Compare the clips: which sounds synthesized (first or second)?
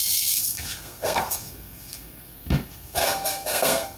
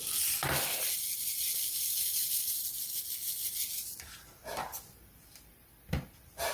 first